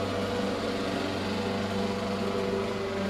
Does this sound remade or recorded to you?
recorded